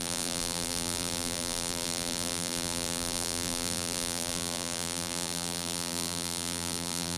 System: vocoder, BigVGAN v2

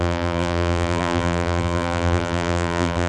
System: vocoder, BigVGAN v2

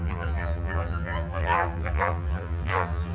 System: vocoder, BigVGAN v2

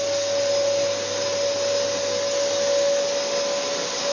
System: none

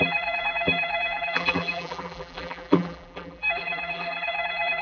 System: vocoder, BigVGAN v2